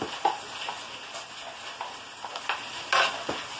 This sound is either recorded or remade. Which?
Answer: recorded